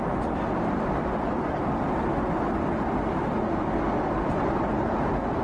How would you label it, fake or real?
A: real